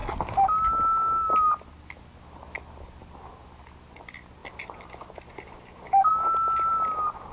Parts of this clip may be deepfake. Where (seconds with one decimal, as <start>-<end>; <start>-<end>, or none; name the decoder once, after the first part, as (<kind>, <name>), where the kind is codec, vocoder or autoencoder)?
none